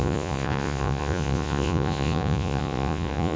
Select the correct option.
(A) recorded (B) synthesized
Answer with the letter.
B